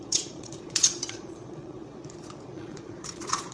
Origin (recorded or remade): remade